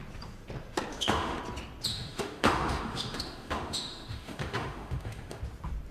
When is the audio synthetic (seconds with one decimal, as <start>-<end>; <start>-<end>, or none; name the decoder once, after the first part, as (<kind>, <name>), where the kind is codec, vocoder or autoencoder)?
0.9-1.4 (autoencoder, DAC-VAE); 1.9-5.4